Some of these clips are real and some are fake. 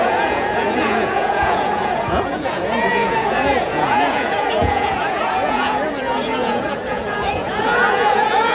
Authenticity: fake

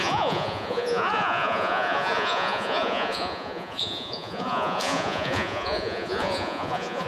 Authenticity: fake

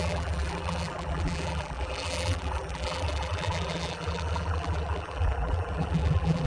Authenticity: fake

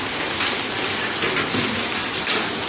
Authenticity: real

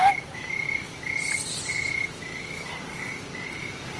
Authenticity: real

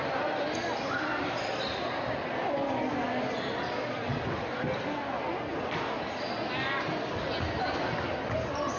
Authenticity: real